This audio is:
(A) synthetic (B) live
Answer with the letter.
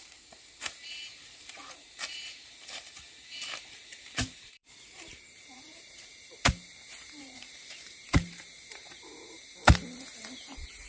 A